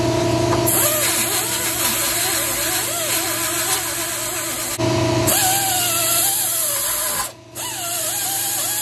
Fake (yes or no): no